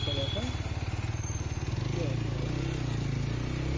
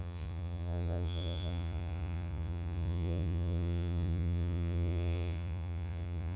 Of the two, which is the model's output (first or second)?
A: second